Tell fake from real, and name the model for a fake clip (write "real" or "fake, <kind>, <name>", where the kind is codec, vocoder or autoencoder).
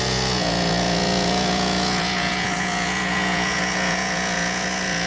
fake, vocoder, Vocos